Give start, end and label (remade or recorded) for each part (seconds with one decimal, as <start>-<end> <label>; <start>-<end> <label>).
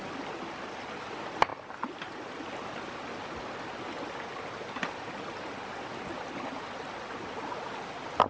0.0-8.3 recorded